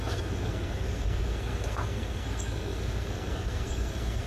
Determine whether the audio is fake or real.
fake